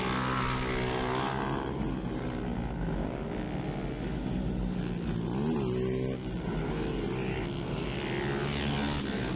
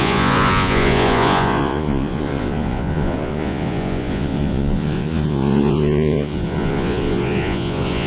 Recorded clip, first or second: first